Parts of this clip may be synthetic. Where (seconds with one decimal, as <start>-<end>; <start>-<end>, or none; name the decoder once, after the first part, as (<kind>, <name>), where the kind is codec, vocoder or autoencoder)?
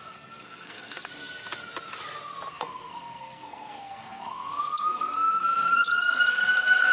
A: 0.0-1.1 (codec, SNAC); 2.5-6.9